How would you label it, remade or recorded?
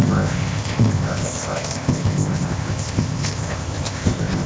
remade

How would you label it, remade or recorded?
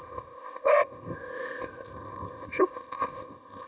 remade